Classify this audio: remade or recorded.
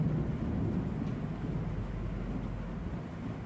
recorded